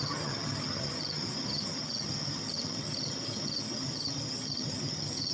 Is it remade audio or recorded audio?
remade